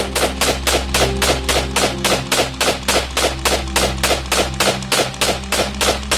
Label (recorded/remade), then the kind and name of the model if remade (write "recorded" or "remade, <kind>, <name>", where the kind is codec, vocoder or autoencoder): recorded